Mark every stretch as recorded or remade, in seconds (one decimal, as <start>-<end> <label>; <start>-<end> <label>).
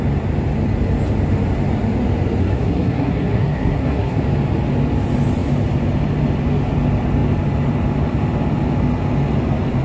0.0-2.4 recorded; 2.4-4.2 remade; 4.2-9.8 recorded